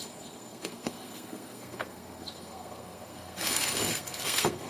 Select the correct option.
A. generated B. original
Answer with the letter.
A